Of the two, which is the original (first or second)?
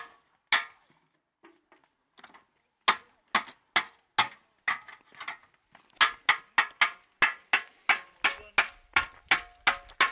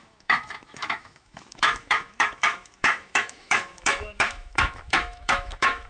first